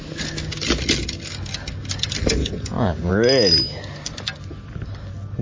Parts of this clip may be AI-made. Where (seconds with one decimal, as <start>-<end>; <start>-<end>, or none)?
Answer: 2.4-3.1